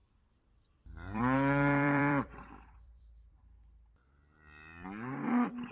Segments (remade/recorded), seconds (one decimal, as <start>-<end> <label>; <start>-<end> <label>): 0.0-3.4 remade; 3.4-5.7 recorded